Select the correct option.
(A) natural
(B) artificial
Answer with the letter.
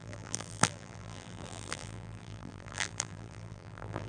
B